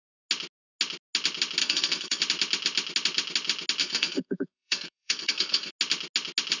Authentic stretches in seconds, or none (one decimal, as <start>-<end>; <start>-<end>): 0.0-1.6; 2.2-3.8; 5.7-6.6

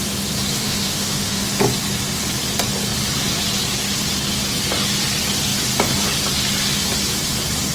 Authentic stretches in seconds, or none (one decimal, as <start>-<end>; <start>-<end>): 0.0-0.6; 1.4-7.7

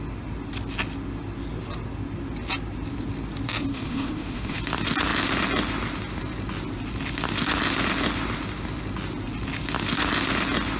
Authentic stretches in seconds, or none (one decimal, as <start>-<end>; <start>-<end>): 0.0-3.7; 4.6-10.8